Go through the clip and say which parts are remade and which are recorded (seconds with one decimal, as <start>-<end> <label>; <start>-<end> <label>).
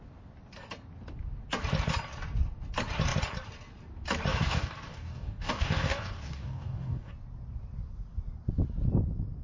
0.0-4.3 recorded; 4.3-7.1 remade; 7.1-9.4 recorded